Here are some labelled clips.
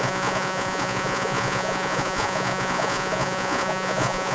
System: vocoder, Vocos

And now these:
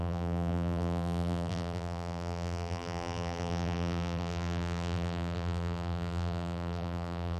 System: vocoder, BigVGAN v2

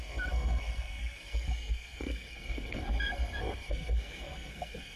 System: codec, SNAC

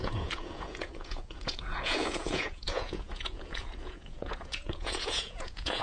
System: vocoder, Vocos